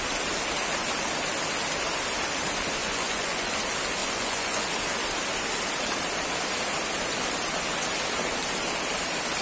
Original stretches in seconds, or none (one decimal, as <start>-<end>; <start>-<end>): 0.0-2.8; 3.5-4.0; 4.7-9.4